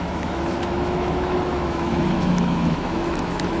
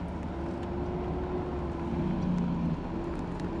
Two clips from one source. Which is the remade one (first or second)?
first